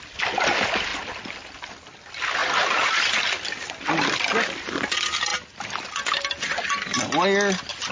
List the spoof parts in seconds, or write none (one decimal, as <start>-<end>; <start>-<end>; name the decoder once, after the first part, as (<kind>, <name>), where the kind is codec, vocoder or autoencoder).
none